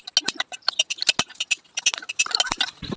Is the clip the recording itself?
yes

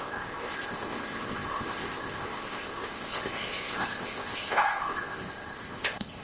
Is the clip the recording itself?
no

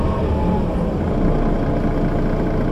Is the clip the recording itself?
yes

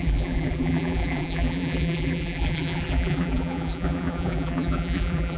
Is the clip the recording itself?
no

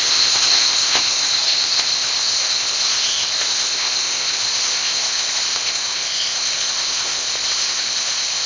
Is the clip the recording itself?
no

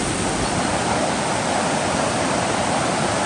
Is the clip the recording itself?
yes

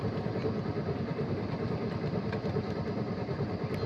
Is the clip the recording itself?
yes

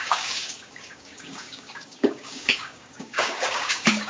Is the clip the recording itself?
no